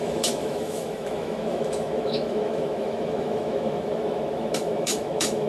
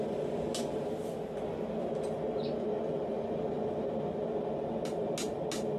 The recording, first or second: second